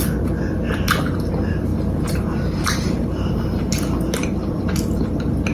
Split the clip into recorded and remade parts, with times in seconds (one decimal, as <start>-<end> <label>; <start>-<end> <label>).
0.0-1.7 recorded; 1.7-3.6 remade; 3.6-5.5 recorded